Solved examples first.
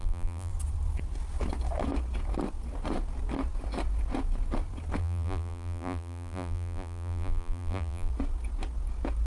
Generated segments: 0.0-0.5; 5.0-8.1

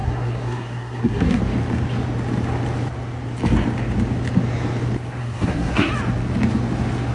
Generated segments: 0.0-1.4; 5.2-5.9

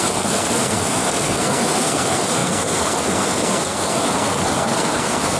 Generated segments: 0.0-5.4

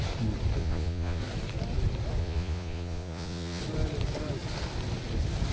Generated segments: 0.6-1.2; 2.2-3.6

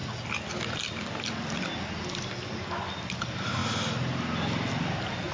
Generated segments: none